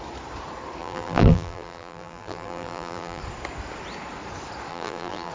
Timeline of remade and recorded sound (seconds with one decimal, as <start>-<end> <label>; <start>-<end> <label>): 0.0-0.8 recorded; 0.8-3.2 remade; 3.2-4.7 recorded; 4.7-5.3 remade